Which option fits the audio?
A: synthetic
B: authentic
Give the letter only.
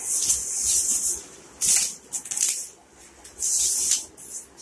B